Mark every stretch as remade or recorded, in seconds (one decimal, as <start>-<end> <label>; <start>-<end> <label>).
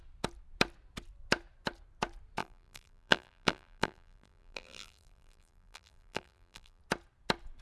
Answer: 0.0-2.4 recorded; 2.4-6.8 remade; 6.8-7.6 recorded